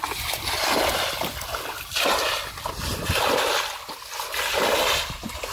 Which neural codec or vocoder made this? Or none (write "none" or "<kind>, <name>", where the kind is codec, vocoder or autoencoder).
none